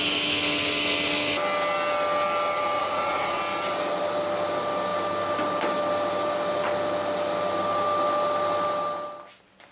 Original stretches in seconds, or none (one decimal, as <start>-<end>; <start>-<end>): 0.0-2.8; 3.4-9.7